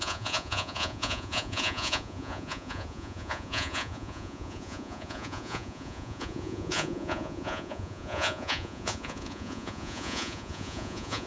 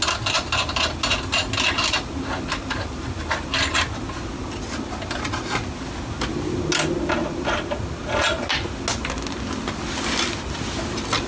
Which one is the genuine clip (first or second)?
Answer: second